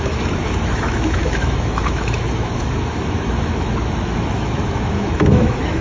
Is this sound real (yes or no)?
no